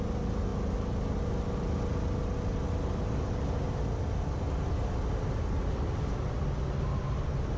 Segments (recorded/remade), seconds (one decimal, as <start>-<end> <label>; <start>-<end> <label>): 0.0-7.6 recorded